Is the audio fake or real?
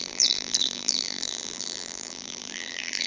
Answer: fake